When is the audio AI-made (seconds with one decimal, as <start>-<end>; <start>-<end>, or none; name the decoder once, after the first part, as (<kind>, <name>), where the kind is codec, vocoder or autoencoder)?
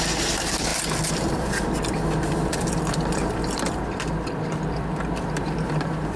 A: 0.0-6.2 (vocoder, BigVGAN v2)